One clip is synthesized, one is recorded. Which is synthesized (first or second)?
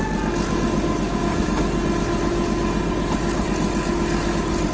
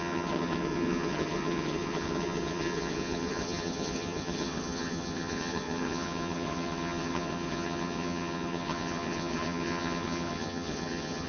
second